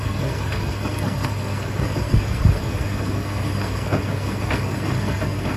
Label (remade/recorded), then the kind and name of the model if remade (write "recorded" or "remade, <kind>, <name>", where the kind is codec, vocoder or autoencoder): remade, codec, SNAC